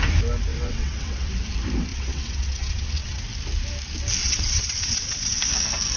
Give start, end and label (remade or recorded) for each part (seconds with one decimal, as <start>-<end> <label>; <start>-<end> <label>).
0.0-0.5 recorded; 0.5-1.3 remade; 1.3-1.9 recorded; 1.9-3.2 remade; 3.2-4.2 recorded; 4.2-5.4 remade; 5.4-6.0 recorded